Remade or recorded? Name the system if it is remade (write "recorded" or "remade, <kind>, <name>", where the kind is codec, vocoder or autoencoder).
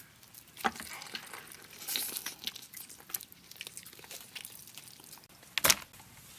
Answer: recorded